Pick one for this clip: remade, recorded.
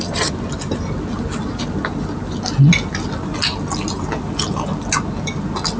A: recorded